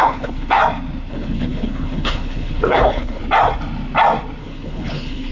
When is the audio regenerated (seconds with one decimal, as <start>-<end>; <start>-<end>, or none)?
0.0-0.6; 1.1-3.2; 4.4-5.3